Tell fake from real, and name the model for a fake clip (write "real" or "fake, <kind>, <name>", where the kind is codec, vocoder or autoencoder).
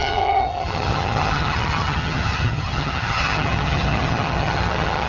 fake, vocoder, HiFi-GAN